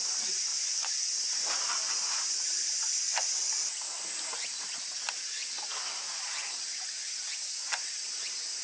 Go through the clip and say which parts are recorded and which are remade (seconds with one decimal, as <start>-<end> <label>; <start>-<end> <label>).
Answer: 0.0-0.5 recorded; 0.5-1.3 remade; 1.3-2.8 recorded; 2.8-3.4 remade; 3.4-8.6 recorded